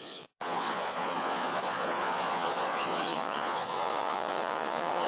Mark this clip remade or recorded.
remade